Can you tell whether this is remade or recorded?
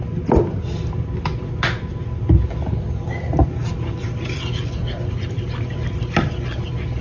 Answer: recorded